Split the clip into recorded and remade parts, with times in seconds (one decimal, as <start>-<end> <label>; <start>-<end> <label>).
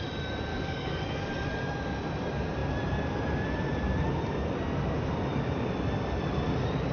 0.0-0.5 recorded; 0.5-1.0 remade; 1.0-6.9 recorded